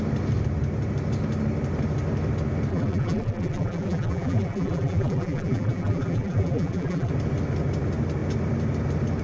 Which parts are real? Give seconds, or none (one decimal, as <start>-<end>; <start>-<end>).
0.0-2.7; 7.1-9.2